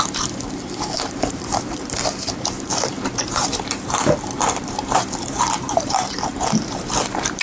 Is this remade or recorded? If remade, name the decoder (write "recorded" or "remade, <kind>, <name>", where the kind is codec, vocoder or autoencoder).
remade, vocoder, BigVGAN v2